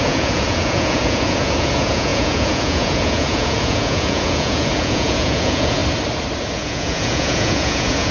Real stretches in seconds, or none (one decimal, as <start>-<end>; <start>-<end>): 5.8-6.4